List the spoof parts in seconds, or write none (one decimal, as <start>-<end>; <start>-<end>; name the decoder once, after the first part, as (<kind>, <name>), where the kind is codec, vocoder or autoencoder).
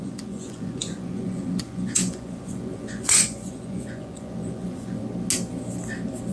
0.0-5.0 (vocoder, Vocos)